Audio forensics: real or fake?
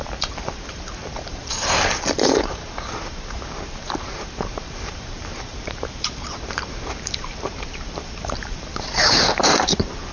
fake